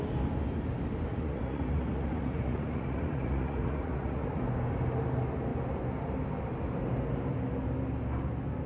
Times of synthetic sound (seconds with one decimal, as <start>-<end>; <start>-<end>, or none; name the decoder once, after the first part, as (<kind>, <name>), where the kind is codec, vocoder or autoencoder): 1.1-4.4 (vocoder, Vocos)